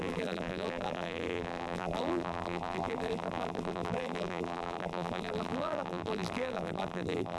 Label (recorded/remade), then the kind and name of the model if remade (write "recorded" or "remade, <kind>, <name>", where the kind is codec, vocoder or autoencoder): remade, vocoder, BigVGAN v2